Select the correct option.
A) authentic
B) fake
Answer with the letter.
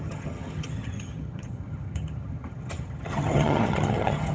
B